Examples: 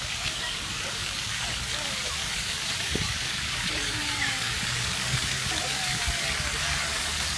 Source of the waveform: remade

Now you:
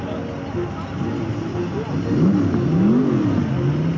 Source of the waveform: recorded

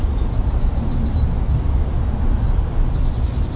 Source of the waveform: recorded